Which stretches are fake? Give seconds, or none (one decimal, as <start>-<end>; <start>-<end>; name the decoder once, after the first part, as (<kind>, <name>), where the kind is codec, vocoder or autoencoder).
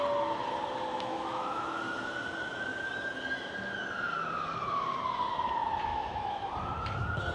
0.9-1.8 (autoencoder, DAC-VAE); 5.9-6.5